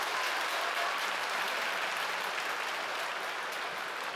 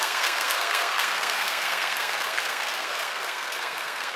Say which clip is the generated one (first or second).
second